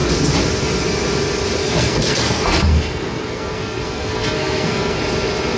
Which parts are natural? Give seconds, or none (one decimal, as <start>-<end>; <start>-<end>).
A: 0.0-1.6; 5.0-5.6